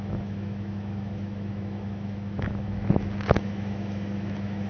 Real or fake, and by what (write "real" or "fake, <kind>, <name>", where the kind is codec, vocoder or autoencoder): fake, autoencoder, DAC-VAE